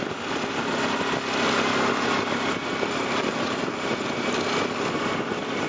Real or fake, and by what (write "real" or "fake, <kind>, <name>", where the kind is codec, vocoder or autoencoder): real